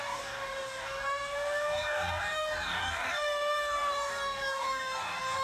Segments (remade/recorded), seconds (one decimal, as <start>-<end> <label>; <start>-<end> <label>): 0.0-5.4 remade